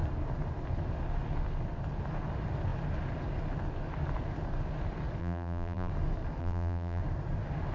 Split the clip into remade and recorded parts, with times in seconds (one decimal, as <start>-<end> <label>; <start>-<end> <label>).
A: 0.0-5.2 recorded; 5.2-5.9 remade; 5.9-6.4 recorded; 6.4-7.0 remade; 7.0-7.7 recorded